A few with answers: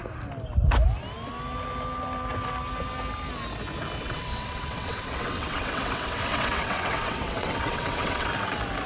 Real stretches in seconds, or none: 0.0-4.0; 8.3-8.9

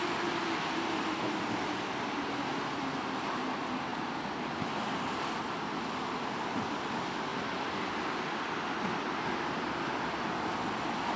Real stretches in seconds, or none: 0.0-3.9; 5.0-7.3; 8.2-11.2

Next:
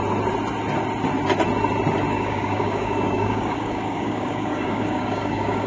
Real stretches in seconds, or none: 0.0-2.1